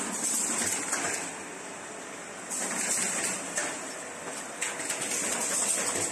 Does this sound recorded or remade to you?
recorded